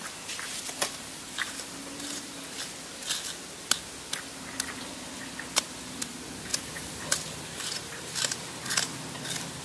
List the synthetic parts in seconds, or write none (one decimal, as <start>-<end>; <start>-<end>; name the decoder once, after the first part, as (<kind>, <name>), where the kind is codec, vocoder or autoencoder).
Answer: 6.5-7.4 (vocoder, BigVGAN v2)

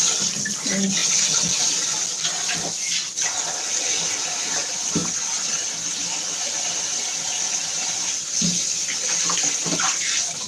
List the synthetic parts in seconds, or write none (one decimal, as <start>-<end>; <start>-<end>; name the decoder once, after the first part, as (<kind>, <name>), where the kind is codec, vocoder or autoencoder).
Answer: none

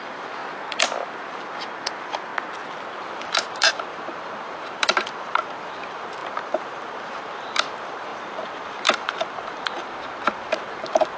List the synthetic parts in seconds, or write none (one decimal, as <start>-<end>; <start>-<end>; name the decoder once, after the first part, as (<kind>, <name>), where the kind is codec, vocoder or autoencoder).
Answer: 0.0-0.4 (vocoder, BigVGAN v2); 1.2-2.3; 3.3-11.2

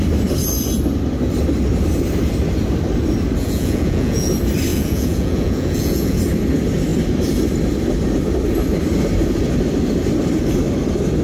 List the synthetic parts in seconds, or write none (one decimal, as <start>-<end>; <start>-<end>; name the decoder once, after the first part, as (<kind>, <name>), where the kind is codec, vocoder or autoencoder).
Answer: 3.4-4.3 (vocoder, Vocos); 4.7-6.2

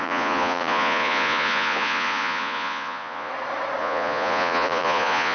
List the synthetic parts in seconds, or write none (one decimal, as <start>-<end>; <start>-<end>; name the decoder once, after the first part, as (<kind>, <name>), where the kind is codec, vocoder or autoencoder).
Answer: 0.0-3.3 (vocoder, Vocos); 3.8-5.3

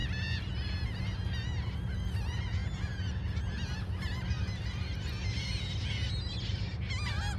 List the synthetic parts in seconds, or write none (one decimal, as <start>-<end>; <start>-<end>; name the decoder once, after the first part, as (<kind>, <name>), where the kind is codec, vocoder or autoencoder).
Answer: none